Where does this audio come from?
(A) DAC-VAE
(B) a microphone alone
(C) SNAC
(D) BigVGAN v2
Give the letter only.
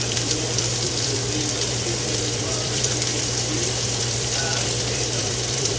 D